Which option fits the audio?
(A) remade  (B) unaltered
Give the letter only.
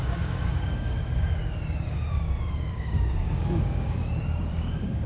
A